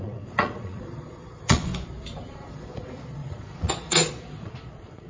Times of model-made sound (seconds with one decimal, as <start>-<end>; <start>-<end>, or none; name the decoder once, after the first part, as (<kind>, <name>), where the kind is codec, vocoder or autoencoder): 0.0-1.7 (vocoder, Vocos); 2.3-5.1